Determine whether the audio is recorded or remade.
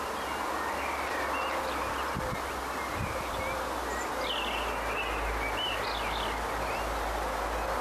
recorded